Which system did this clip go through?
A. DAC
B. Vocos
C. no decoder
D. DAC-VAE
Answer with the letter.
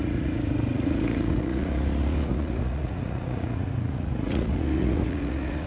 B